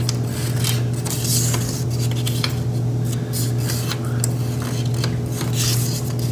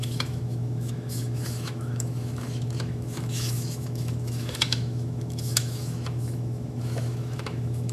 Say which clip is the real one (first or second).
first